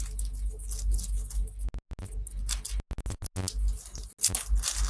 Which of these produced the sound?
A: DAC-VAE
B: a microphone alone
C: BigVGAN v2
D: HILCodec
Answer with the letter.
B